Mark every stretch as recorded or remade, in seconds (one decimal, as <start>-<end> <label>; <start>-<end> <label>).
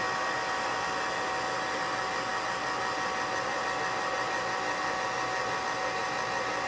0.0-6.7 recorded